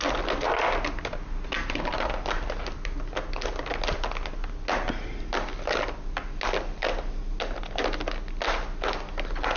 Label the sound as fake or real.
real